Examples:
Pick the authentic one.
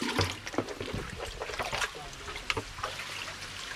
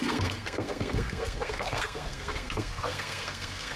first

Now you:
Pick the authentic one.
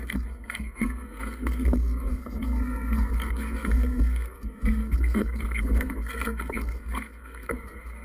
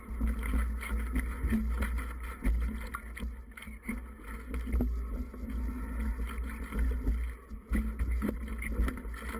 second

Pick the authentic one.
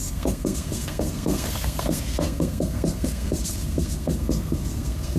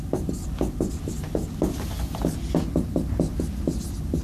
second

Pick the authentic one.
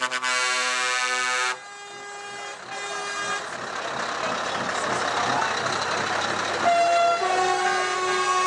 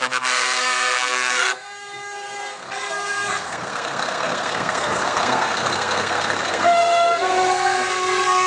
first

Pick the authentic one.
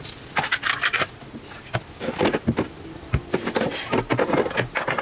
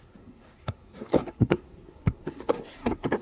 first